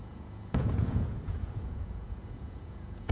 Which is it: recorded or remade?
remade